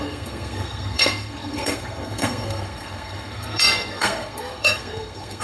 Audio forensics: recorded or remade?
remade